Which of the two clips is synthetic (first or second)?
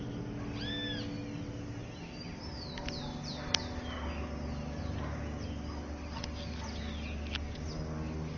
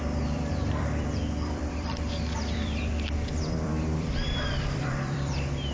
second